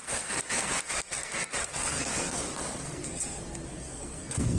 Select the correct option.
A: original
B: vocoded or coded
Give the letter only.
B